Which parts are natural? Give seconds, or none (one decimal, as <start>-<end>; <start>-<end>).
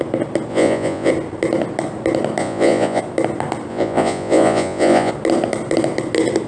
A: 0.0-0.5; 1.1-2.4; 3.0-3.7; 5.1-6.5